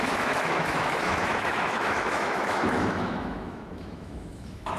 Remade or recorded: remade